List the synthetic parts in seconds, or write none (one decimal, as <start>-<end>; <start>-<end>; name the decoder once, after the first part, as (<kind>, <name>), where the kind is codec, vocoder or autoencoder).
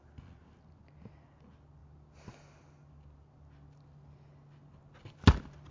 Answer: none